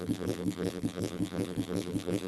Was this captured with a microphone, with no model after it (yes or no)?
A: no